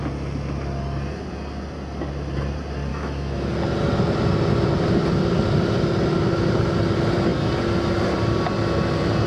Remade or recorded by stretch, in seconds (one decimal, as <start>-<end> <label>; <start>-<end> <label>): 0.0-2.9 recorded; 2.9-3.5 remade; 3.5-9.3 recorded